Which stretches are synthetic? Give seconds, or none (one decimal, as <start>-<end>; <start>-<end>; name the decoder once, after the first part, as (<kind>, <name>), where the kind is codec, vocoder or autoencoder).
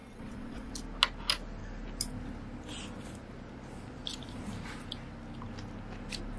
0.0-0.7 (vocoder, WaveNeXt)